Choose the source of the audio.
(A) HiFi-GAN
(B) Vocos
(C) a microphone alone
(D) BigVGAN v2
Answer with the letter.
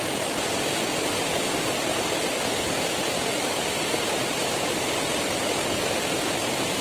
C